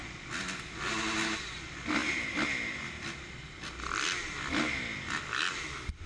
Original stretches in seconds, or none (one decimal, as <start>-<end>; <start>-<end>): 0.0-6.1